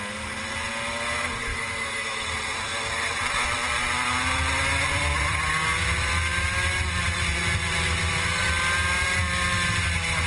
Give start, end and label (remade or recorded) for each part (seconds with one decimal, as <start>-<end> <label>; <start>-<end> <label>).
0.0-1.5 recorded; 1.5-2.3 remade; 2.3-10.3 recorded